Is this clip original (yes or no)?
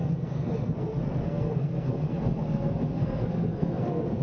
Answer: no